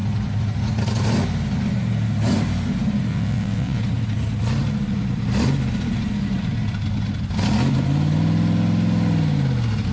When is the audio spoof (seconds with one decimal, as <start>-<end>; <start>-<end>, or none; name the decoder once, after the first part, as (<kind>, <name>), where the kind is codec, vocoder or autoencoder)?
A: 3.1-3.8 (vocoder, WaveNeXt)